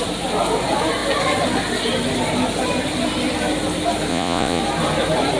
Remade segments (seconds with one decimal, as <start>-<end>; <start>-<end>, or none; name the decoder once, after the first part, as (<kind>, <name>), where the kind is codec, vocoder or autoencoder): 4.1-4.6 (vocoder, Vocos)